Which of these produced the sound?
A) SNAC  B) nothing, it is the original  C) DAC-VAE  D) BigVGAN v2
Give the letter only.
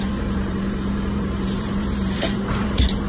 D